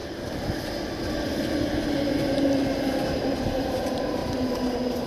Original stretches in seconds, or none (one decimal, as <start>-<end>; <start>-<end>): 0.0-1.9; 4.2-5.1